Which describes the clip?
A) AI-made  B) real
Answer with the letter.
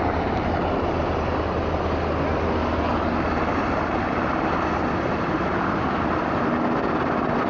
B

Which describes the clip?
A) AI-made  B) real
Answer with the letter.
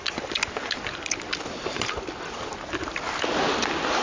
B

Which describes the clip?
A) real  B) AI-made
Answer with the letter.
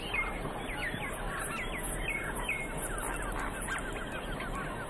A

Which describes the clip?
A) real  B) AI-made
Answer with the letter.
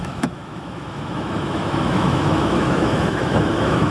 B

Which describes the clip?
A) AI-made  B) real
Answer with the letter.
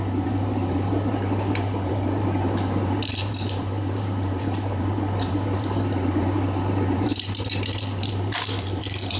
A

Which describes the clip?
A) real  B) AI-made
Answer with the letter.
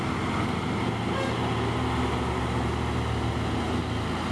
A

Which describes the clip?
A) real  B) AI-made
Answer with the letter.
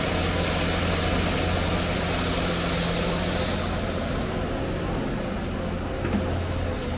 A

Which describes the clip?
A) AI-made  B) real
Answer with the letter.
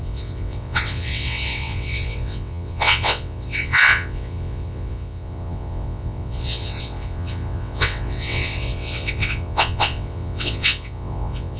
A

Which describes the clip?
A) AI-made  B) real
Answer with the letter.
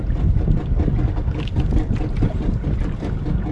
B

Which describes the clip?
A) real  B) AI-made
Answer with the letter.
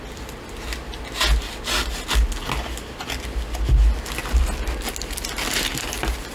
A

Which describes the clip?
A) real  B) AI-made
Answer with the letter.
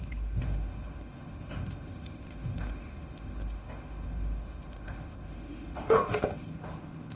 B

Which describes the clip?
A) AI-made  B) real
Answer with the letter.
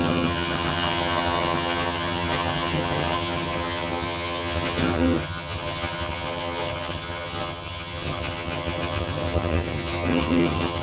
A